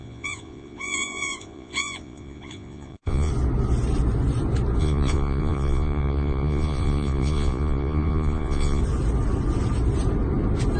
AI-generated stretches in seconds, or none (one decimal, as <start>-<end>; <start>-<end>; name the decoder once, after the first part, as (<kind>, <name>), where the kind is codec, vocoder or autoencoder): 0.0-3.3 (vocoder, Vocos); 4.8-8.8